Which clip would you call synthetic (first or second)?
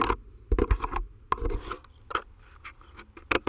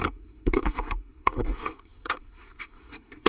second